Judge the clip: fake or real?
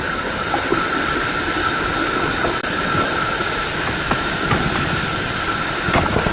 real